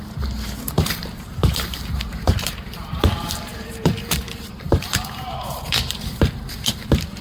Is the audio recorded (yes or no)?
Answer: no